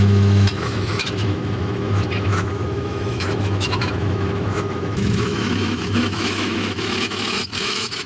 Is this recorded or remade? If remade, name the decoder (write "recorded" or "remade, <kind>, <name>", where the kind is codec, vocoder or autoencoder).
remade, autoencoder, DAC-VAE